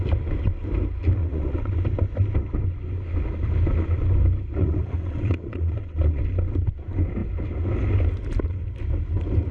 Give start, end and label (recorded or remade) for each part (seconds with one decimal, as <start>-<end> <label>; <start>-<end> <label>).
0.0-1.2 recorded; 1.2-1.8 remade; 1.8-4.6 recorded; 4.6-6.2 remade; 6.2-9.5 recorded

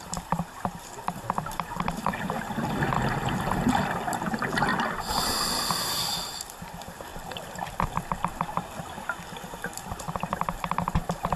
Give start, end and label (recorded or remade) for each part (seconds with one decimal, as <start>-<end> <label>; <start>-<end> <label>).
0.0-4.7 remade; 4.7-5.8 recorded; 5.8-7.1 remade; 7.1-9.8 recorded; 9.8-11.4 remade

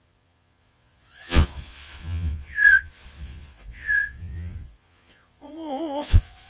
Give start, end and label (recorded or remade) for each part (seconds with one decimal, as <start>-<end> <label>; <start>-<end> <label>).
0.0-6.5 remade